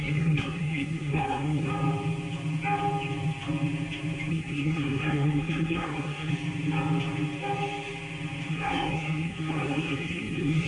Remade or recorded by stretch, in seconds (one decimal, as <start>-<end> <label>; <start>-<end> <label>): 0.0-1.7 remade; 1.7-4.3 recorded; 4.3-6.3 remade; 6.3-8.5 recorded; 8.5-10.7 remade